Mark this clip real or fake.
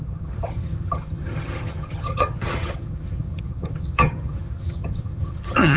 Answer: fake